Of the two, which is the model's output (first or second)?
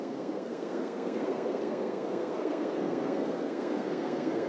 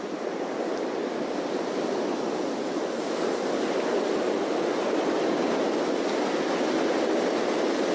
first